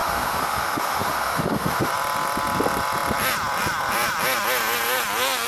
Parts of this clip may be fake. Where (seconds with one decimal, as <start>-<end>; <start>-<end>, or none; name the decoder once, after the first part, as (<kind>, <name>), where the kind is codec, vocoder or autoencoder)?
0.0-1.9 (autoencoder, DAC-VAE)